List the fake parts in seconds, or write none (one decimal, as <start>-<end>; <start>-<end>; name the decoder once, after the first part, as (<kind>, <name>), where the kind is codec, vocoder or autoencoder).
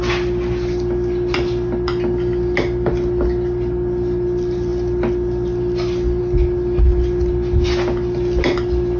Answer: none